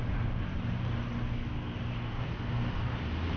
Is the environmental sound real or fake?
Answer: real